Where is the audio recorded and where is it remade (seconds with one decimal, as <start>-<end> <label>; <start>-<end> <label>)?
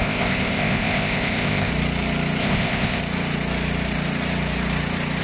0.0-1.7 remade; 1.7-2.4 recorded; 2.4-3.0 remade; 3.0-5.2 recorded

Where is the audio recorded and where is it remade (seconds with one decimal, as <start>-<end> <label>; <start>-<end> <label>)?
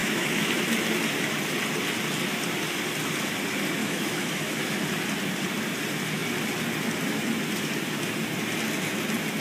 0.0-0.6 remade; 0.6-3.8 recorded; 3.8-4.6 remade; 4.6-9.4 recorded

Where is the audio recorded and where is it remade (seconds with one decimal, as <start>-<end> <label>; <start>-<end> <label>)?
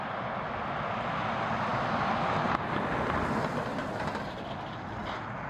0.0-5.5 recorded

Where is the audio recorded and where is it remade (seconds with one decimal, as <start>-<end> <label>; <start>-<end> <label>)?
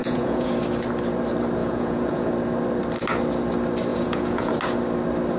0.0-0.5 remade; 0.5-1.6 recorded; 1.6-2.3 remade; 2.3-3.9 recorded; 3.9-4.5 remade; 4.5-5.4 recorded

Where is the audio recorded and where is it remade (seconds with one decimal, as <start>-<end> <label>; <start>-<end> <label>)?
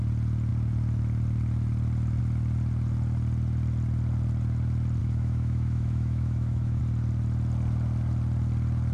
0.0-5.0 recorded; 5.0-6.8 remade; 6.8-8.9 recorded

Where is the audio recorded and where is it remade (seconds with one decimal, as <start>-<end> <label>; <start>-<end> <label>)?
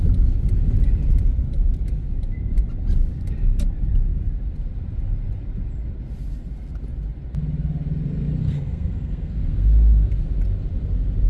0.0-8.4 recorded; 8.4-10.1 remade; 10.1-11.3 recorded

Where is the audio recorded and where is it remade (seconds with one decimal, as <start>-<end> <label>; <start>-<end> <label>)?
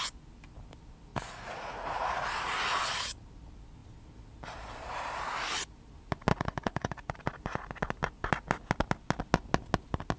0.0-1.1 recorded; 1.1-2.3 remade; 2.3-6.3 recorded; 6.3-7.2 remade; 7.2-10.2 recorded